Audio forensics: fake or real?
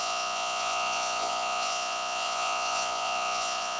fake